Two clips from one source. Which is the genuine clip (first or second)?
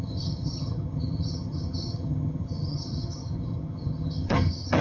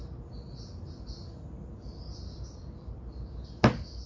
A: second